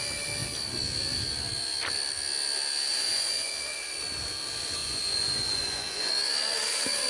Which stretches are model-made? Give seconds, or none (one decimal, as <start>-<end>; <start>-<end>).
2.9-3.5; 4.8-6.1